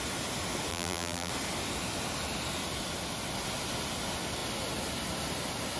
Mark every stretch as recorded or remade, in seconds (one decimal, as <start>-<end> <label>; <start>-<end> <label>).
0.0-0.7 recorded; 0.7-1.3 remade; 1.3-5.8 recorded

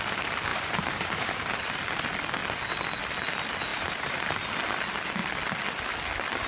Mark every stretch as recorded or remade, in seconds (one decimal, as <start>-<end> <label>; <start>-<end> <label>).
0.0-0.5 recorded; 0.5-1.8 remade; 1.8-3.7 recorded; 3.7-4.3 remade; 4.3-6.5 recorded

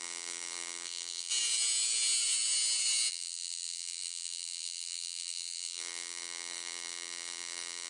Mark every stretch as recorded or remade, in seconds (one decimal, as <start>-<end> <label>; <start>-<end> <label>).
0.0-1.3 remade; 1.3-3.1 recorded; 3.1-7.9 remade